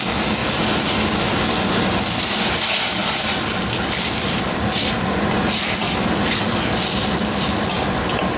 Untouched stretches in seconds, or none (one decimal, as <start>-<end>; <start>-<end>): 0.0-8.4